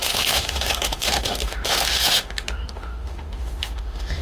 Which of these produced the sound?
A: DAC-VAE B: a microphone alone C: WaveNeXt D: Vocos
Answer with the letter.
A